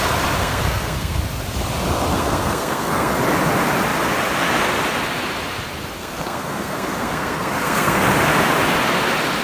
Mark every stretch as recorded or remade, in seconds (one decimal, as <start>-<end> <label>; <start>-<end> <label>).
0.0-0.4 recorded; 0.4-1.2 remade; 1.2-2.1 recorded; 2.1-3.1 remade; 3.1-6.0 recorded; 6.0-8.0 remade; 8.0-9.4 recorded